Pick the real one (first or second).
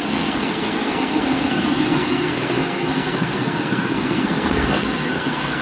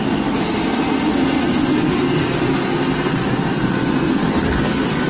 second